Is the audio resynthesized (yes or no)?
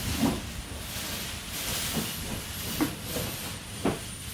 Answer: no